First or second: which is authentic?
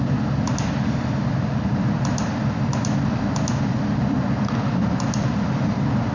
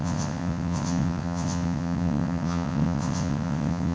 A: first